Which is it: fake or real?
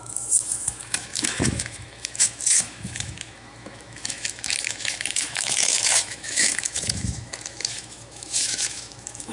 fake